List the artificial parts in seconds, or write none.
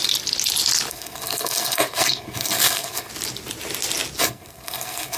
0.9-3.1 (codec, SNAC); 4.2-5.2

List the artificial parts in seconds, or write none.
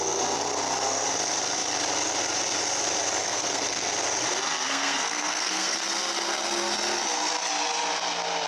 3.2-3.9 (codec, SNAC); 4.6-5.8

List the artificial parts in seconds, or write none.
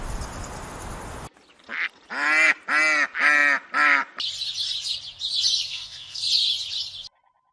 5.7-6.2 (codec, SNAC)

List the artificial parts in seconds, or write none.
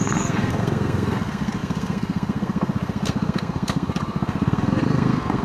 0.0-5.4 (codec, SNAC)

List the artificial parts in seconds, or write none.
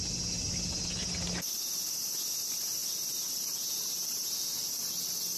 none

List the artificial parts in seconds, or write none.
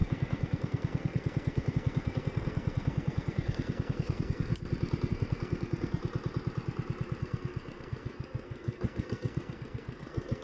0.0-4.5 (codec, SNAC); 5.1-6.0; 7.2-10.4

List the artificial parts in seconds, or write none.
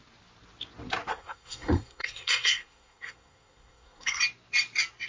1.1-4.2 (codec, SNAC)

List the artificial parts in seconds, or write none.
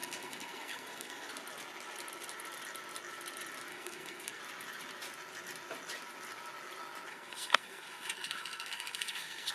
0.0-1.3 (codec, SNAC); 3.7-4.4; 7.1-9.5